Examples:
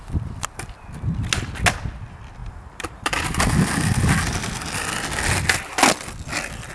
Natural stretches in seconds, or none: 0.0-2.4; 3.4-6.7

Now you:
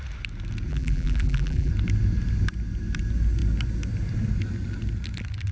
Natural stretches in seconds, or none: 0.0-0.7; 1.7-5.5

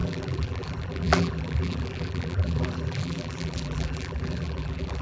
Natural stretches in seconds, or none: none

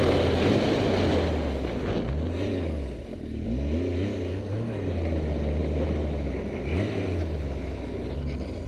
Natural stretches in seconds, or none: 0.0-8.7

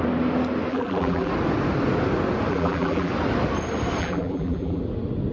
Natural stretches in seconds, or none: 0.0-0.7; 1.3-2.5; 3.1-4.0; 4.8-5.3

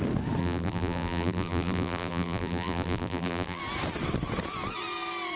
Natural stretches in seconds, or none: 0.0-0.4; 3.6-5.4